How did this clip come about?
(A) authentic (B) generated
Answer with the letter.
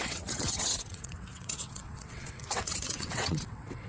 B